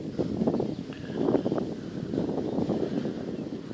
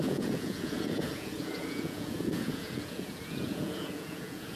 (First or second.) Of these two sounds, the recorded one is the first